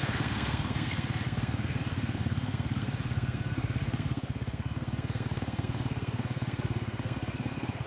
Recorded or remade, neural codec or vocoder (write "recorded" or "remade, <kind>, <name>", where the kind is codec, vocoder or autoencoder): remade, codec, SNAC